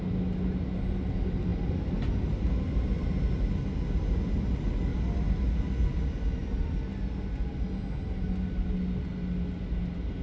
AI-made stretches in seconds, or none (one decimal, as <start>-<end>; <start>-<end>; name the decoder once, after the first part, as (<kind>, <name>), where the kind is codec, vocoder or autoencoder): none